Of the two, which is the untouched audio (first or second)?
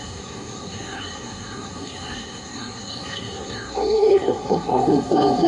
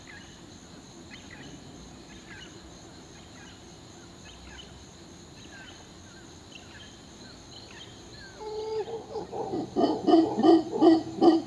second